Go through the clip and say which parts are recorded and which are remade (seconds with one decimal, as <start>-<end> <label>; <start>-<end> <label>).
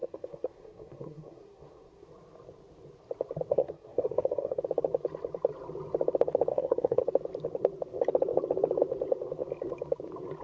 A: 0.0-2.1 remade; 2.1-3.5 recorded; 3.5-4.6 remade; 4.6-6.5 recorded; 6.5-7.0 remade; 7.0-10.4 recorded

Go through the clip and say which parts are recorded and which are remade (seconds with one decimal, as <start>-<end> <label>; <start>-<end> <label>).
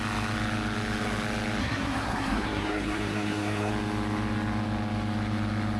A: 0.0-1.6 recorded; 1.6-3.7 remade; 3.7-5.8 recorded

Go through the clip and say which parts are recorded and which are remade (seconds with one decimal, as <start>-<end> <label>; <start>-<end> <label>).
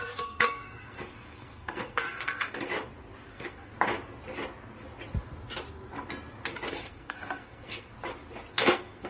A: 0.0-2.7 remade; 2.7-3.3 recorded; 3.3-3.7 remade; 3.7-6.7 recorded; 6.7-7.9 remade; 7.9-8.5 recorded; 8.5-9.1 remade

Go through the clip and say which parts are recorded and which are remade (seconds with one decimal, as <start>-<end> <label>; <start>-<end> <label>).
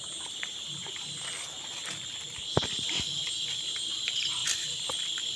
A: 0.0-5.4 recorded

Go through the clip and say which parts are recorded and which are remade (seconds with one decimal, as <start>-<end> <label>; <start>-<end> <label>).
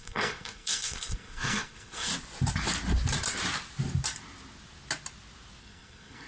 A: 0.0-2.1 remade; 2.1-5.6 recorded; 5.6-6.3 remade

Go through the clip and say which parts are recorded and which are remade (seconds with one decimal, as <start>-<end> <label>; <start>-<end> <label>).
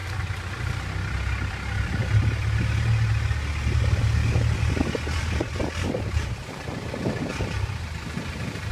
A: 0.0-8.7 recorded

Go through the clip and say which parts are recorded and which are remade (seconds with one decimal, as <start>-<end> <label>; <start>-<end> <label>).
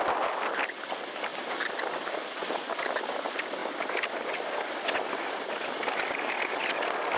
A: 0.0-7.2 recorded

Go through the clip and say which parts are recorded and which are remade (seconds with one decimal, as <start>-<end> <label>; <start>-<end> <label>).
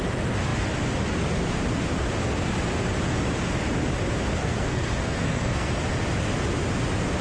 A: 0.0-4.4 recorded; 4.4-5.8 remade; 5.8-7.2 recorded